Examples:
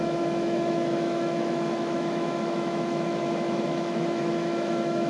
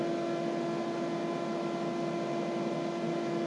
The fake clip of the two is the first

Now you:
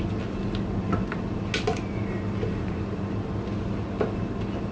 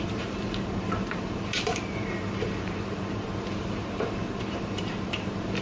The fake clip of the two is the second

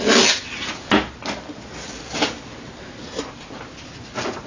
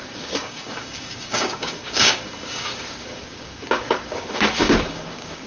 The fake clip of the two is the second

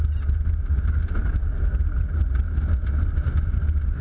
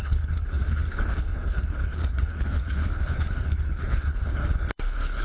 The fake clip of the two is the second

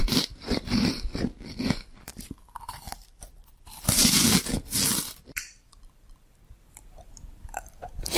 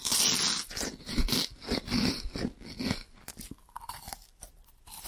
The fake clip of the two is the first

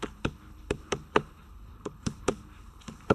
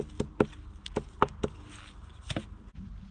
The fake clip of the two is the first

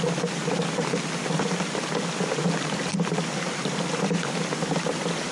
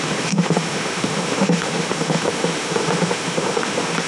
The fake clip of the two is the second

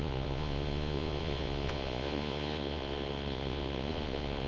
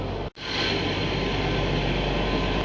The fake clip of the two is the first